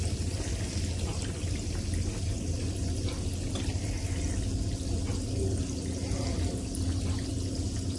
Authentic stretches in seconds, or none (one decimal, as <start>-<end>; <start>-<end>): 0.0-8.0